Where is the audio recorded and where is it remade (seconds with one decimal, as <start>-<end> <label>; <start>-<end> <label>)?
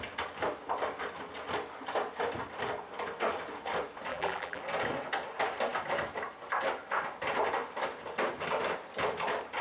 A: 0.0-4.1 recorded; 4.1-4.6 remade; 4.6-9.6 recorded